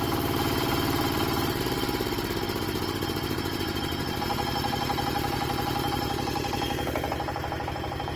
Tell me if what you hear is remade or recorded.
remade